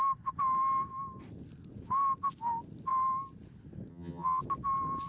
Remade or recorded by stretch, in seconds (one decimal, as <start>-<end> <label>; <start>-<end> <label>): 0.0-3.9 recorded; 3.9-4.4 remade; 4.4-5.1 recorded

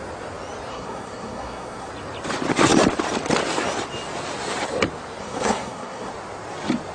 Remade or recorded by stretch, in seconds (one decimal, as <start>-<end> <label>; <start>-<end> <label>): 0.0-0.7 recorded; 0.7-1.9 remade; 1.9-5.2 recorded; 5.2-6.1 remade; 6.1-6.9 recorded